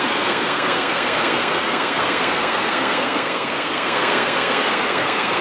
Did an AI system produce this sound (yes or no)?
yes